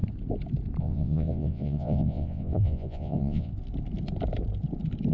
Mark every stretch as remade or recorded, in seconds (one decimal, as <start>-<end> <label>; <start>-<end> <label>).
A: 0.0-0.8 recorded; 0.8-3.5 remade; 3.5-5.1 recorded